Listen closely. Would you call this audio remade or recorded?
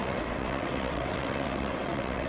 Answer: remade